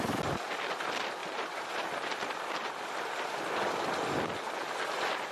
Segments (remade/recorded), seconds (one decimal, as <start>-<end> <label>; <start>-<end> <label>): 0.0-1.2 recorded; 1.2-2.7 remade; 2.7-5.3 recorded